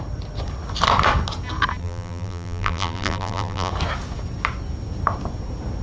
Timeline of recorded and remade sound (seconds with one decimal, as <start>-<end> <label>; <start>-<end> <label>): 0.0-1.8 recorded; 1.8-3.7 remade; 3.7-5.8 recorded